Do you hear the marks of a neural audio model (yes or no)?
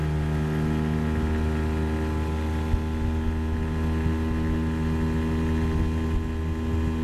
no